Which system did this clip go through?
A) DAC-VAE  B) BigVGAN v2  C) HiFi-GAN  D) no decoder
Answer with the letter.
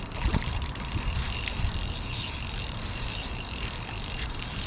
B